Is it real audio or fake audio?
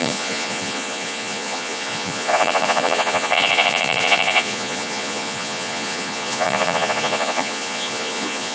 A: fake